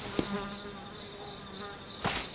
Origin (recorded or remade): recorded